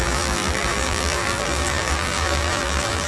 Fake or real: fake